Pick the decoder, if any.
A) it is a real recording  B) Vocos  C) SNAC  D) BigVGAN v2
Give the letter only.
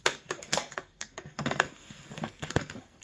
C